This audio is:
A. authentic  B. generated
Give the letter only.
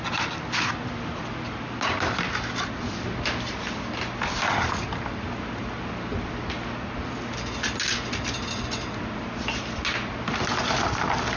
A